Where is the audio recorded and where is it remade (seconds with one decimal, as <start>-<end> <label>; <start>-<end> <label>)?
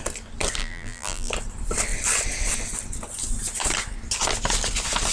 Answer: 0.0-0.6 recorded; 0.6-1.3 remade; 1.3-5.1 recorded